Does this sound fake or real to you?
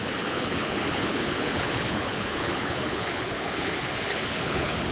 fake